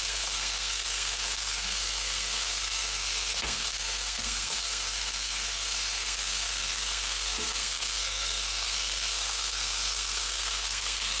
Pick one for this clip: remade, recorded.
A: remade